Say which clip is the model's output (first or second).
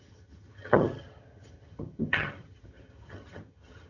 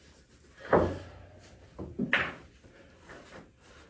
first